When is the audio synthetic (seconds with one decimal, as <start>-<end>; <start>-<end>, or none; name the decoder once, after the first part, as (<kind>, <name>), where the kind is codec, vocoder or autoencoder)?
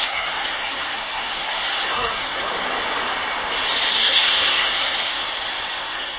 0.0-2.5 (codec, SNAC); 3.9-5.2; 5.7-6.2